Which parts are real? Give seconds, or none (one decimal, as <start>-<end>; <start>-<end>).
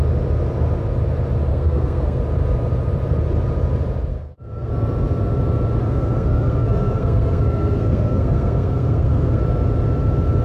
0.0-1.5; 2.2-4.1; 4.7-5.8; 9.4-10.4